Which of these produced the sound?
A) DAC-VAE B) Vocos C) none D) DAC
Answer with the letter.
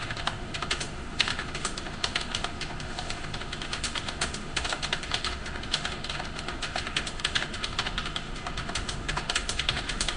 A